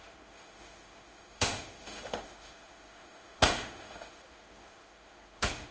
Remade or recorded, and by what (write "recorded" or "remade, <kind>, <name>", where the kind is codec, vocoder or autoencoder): remade, autoencoder, DAC-VAE